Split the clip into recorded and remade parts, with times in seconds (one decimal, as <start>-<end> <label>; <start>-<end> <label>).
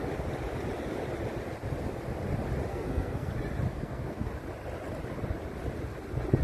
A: 0.0-2.7 recorded; 2.7-3.3 remade; 3.3-3.7 recorded; 3.7-4.3 remade; 4.3-6.4 recorded